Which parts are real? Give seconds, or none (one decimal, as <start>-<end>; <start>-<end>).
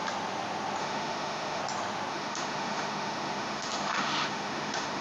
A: 0.0-0.8; 1.6-2.1